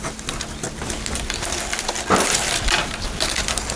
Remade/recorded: recorded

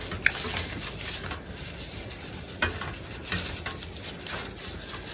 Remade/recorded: recorded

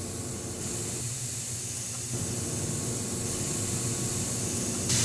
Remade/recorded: recorded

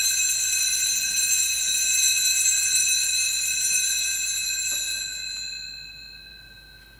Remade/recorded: recorded